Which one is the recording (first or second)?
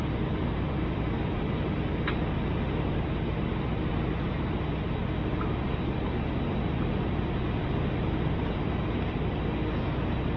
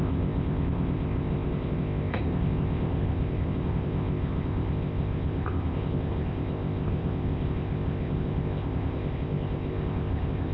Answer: first